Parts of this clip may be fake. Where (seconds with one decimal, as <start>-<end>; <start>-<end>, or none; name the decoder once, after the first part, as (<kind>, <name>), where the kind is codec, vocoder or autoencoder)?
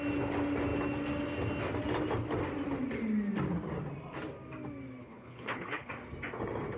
5.0-5.9 (codec, HILCodec)